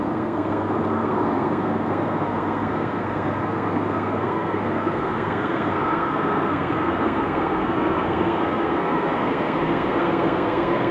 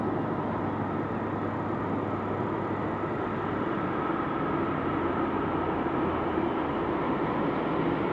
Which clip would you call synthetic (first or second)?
first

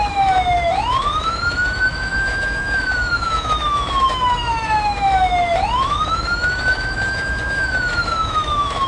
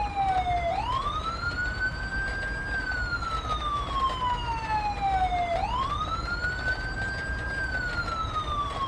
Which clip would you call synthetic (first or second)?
first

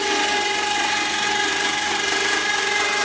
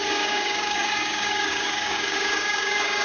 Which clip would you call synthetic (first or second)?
second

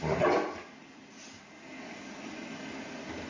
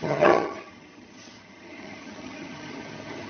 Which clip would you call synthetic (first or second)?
second